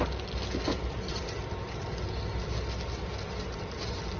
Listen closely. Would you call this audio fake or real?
real